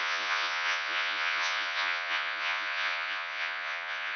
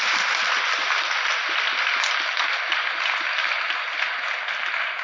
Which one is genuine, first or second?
second